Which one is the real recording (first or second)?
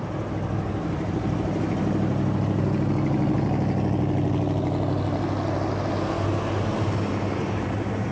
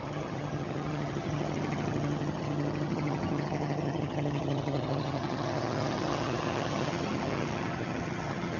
first